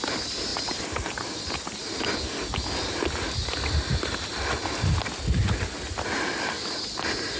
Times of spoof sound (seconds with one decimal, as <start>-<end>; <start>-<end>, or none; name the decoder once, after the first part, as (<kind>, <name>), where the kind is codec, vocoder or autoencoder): 0.5-1.5 (vocoder, BigVGAN v2); 4.6-5.4